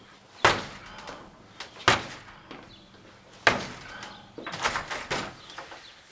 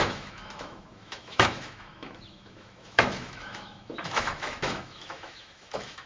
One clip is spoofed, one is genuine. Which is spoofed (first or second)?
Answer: second